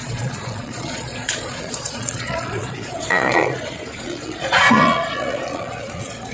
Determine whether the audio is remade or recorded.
remade